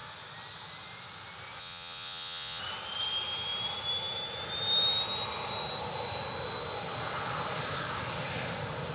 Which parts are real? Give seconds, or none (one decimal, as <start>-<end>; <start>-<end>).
0.0-1.6; 2.6-8.9